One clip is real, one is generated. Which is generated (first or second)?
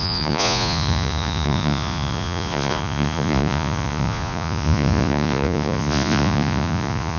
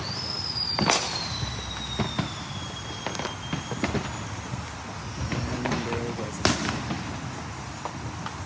first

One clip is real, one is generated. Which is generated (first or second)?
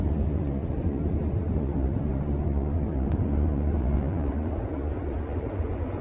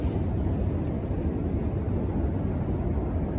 first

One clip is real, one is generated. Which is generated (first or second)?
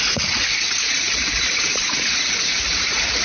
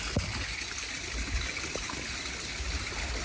first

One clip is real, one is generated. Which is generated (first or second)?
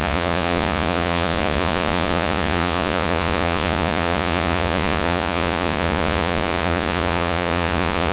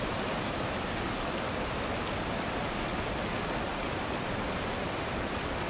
first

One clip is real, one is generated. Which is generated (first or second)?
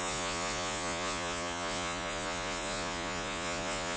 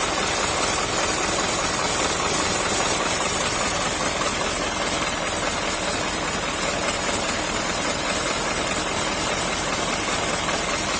first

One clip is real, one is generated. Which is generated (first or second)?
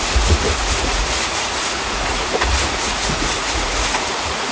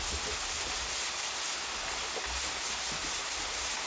first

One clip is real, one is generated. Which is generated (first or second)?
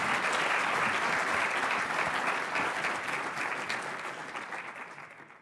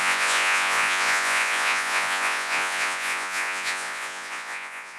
second